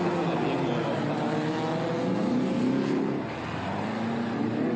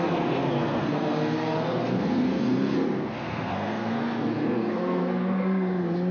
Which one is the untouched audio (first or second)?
first